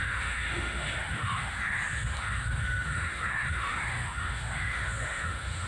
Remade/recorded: remade